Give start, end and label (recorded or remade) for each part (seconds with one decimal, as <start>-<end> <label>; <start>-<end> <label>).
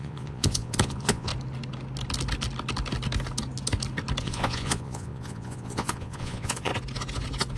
0.0-1.3 remade; 1.3-4.2 recorded; 4.2-6.7 remade; 6.7-7.6 recorded